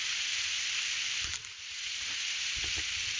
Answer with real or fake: real